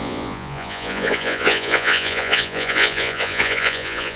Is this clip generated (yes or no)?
yes